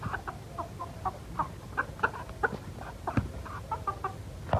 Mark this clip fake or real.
real